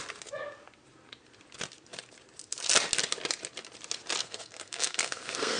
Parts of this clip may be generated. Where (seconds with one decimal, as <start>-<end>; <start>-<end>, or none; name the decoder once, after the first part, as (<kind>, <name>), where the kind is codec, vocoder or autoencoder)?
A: 4.2-5.6 (codec, SNAC)